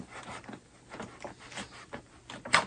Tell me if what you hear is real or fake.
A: real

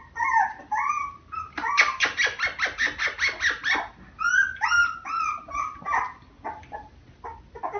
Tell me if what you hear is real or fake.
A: real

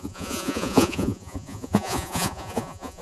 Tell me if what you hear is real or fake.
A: fake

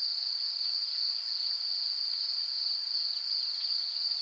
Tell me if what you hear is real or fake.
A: real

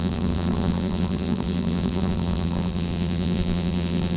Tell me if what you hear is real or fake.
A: fake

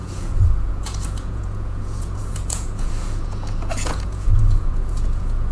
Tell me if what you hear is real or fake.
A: fake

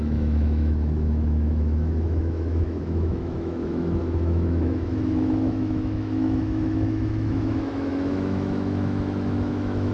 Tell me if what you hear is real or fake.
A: fake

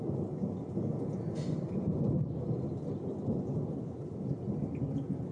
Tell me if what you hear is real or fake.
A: real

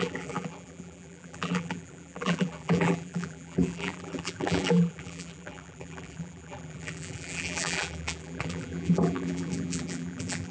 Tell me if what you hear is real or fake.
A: fake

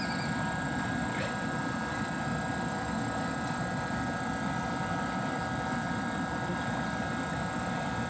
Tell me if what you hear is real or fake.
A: real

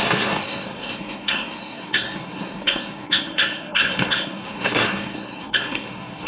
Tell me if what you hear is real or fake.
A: fake